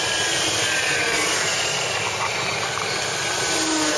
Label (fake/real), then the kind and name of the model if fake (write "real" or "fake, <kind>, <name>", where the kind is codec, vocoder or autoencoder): real